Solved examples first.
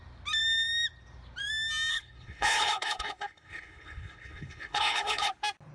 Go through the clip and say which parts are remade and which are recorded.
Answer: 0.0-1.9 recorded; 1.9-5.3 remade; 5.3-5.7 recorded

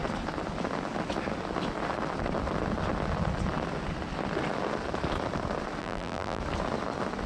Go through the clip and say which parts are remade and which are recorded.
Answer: 0.0-5.8 recorded; 5.8-6.4 remade; 6.4-7.3 recorded

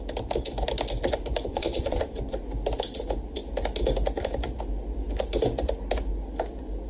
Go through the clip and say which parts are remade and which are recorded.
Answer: 0.0-1.5 recorded; 1.5-2.0 remade; 2.0-6.9 recorded

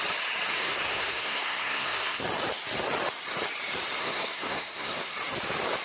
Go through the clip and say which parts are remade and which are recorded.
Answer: 0.0-0.6 recorded; 0.6-2.2 remade; 2.2-4.0 recorded; 4.0-5.1 remade; 5.1-5.8 recorded

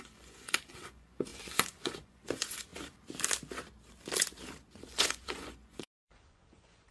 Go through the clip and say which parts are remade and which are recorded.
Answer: 0.0-2.7 remade; 2.7-4.7 recorded; 4.7-6.9 remade

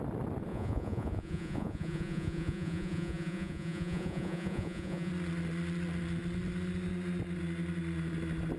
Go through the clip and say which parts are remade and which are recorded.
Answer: 0.0-0.5 recorded; 0.5-5.1 remade; 5.1-8.6 recorded

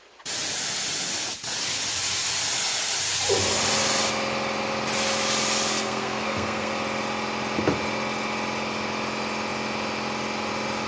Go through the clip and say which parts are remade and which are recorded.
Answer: 0.0-5.7 recorded; 5.7-6.7 remade; 6.7-10.9 recorded